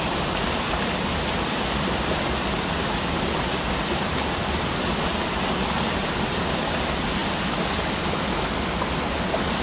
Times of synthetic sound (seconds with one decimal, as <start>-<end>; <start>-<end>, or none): none